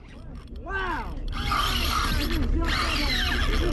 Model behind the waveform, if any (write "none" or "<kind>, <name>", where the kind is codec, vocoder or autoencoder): none